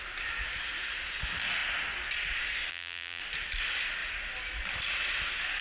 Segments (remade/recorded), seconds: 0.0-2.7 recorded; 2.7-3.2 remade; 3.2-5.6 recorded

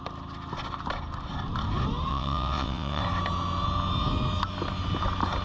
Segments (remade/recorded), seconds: 0.0-2.1 recorded; 2.1-3.0 remade; 3.0-5.4 recorded

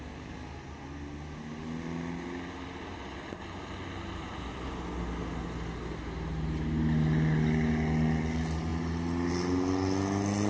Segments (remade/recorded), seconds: 0.0-10.5 recorded

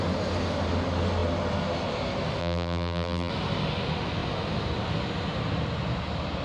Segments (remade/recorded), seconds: 0.0-2.4 recorded; 2.4-3.3 remade; 3.3-6.4 recorded

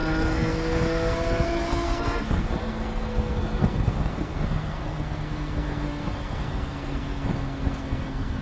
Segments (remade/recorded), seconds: 0.0-8.4 remade

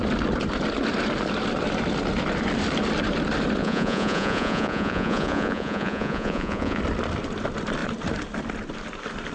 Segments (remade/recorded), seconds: 0.0-3.6 recorded; 3.6-6.8 remade; 6.8-9.3 recorded

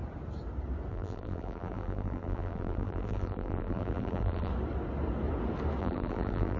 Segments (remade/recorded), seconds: 0.0-0.9 recorded; 0.9-4.5 remade; 4.5-5.8 recorded; 5.8-6.6 remade